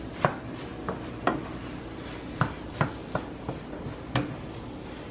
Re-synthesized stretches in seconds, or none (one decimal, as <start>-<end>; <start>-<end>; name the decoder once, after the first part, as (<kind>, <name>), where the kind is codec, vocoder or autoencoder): none